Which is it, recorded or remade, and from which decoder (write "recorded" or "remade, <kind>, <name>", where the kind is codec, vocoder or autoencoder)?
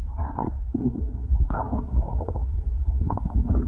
remade, codec, SNAC